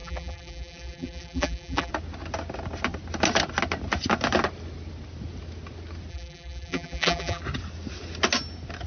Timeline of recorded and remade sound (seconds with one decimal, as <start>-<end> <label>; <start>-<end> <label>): 0.0-1.9 remade; 1.9-6.1 recorded; 6.1-7.4 remade; 7.4-8.9 recorded